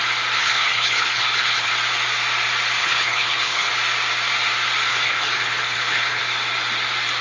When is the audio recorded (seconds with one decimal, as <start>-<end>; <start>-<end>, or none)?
0.0-0.4; 1.7-2.8; 3.7-4.9; 6.2-7.2